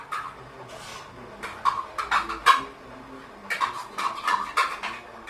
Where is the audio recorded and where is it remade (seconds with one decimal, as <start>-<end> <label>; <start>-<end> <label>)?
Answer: 0.0-5.3 recorded